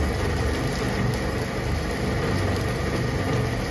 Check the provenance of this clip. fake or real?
real